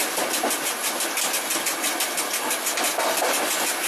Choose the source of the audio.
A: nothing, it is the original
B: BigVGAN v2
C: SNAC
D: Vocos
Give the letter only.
A